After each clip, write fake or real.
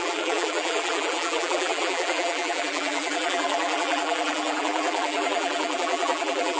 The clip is fake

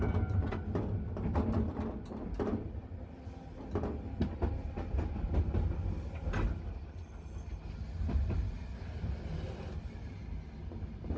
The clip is real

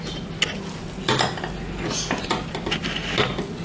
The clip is real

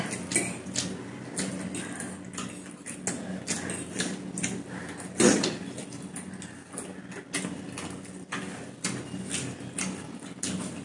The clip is real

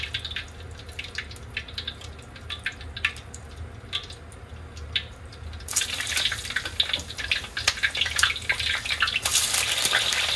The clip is real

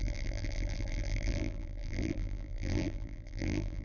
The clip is fake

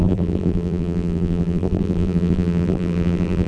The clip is fake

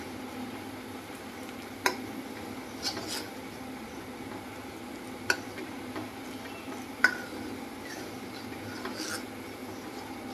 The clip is real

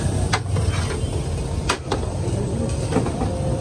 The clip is fake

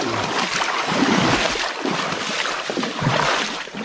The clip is fake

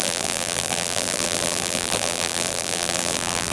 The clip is fake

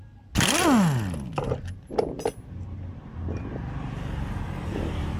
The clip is real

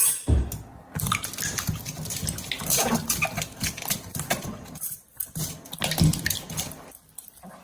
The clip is real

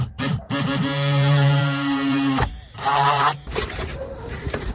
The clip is fake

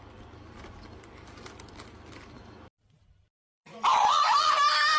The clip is fake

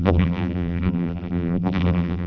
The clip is fake